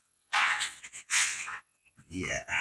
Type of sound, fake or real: fake